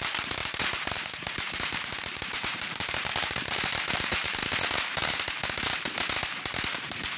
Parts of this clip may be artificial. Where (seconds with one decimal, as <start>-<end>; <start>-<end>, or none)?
0.0-4.4; 6.5-7.2